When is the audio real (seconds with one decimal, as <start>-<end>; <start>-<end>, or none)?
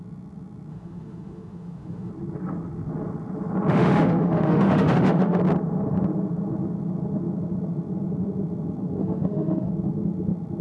0.0-0.7; 2.1-3.7; 5.4-9.0; 9.7-10.6